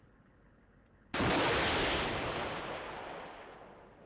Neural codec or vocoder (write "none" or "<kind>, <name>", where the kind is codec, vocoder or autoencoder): none